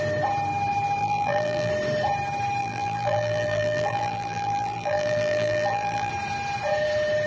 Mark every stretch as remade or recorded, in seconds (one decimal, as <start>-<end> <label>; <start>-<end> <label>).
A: 0.0-1.0 recorded; 1.0-1.7 remade; 1.7-2.6 recorded; 2.6-6.1 remade; 6.1-7.3 recorded